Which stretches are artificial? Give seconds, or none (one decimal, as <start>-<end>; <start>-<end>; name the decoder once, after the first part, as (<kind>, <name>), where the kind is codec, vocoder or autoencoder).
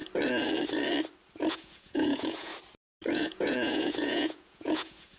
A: 1.5-2.5 (vocoder, Vocos); 3.1-5.2